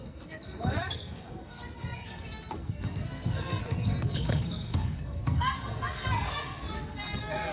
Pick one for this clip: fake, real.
fake